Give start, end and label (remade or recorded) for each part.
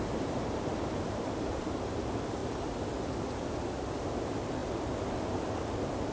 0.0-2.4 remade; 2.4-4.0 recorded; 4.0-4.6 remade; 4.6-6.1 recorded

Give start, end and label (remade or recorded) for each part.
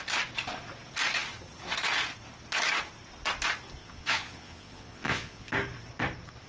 0.0-3.8 recorded; 3.8-5.5 remade; 5.5-6.5 recorded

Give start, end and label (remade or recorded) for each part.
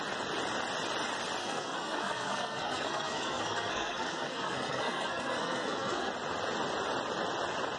0.0-1.4 recorded; 1.4-6.1 remade; 6.1-7.8 recorded